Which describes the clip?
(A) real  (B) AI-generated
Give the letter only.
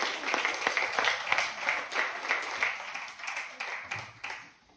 A